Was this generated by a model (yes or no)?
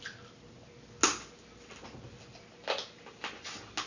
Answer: no